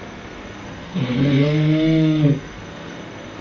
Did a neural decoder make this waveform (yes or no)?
yes